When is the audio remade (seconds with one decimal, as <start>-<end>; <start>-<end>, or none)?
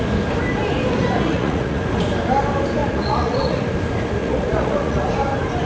1.2-1.8; 2.8-3.6; 4.2-5.1